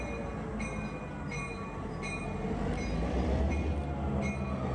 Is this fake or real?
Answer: real